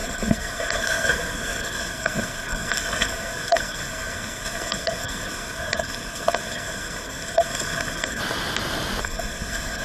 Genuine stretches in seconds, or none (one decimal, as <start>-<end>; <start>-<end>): 8.2-9.0